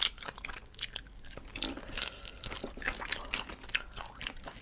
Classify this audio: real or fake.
real